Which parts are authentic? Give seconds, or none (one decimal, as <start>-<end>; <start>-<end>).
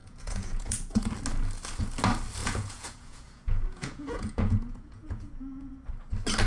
1.1-2.4; 5.7-6.5